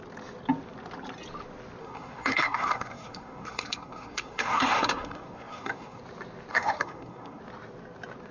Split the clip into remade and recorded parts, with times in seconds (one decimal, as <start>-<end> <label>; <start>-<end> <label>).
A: 0.0-1.8 recorded; 1.8-6.0 remade; 6.0-6.5 recorded; 6.5-7.4 remade; 7.4-8.3 recorded